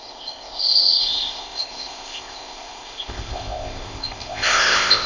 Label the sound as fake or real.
fake